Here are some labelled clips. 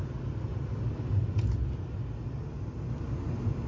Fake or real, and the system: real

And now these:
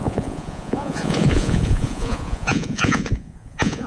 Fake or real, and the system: fake, vocoder, Vocos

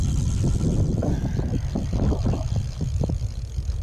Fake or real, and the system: real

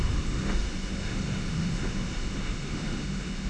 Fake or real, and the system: fake, autoencoder, DAC-VAE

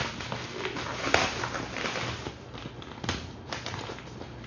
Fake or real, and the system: real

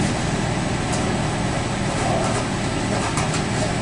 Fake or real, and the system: real